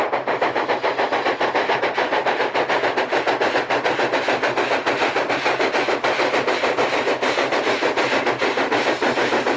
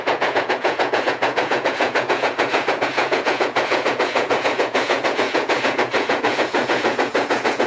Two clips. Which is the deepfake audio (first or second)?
second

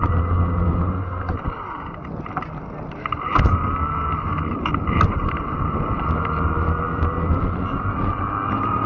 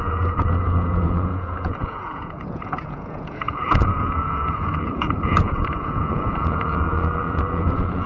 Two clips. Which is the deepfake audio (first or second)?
second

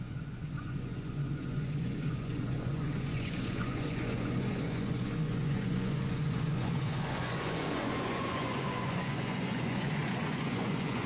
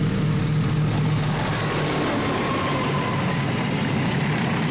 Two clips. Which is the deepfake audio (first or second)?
first